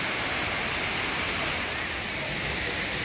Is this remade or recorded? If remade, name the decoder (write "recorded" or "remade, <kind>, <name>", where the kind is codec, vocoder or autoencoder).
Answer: recorded